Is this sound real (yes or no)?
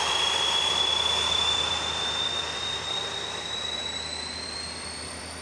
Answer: no